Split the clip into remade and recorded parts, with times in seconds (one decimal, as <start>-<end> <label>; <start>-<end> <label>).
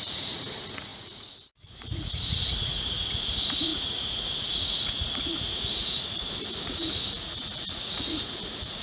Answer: 0.0-8.8 remade